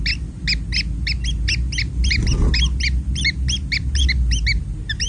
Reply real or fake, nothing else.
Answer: real